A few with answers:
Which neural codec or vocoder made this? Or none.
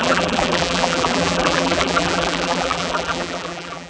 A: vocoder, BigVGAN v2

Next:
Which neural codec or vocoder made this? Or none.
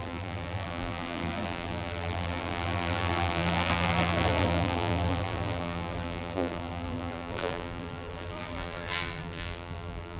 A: vocoder, BigVGAN v2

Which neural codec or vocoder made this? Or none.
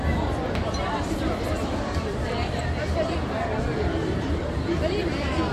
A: vocoder, BigVGAN v2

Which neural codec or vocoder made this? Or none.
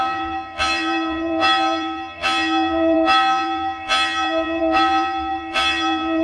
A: vocoder, BigVGAN v2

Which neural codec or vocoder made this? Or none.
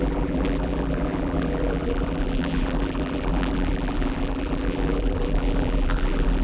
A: vocoder, BigVGAN v2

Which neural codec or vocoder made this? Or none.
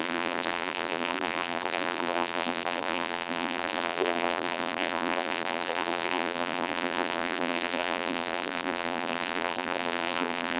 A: vocoder, BigVGAN v2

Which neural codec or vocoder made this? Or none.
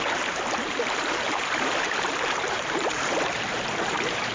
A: vocoder, BigVGAN v2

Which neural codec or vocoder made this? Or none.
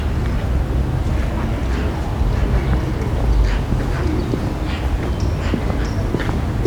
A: none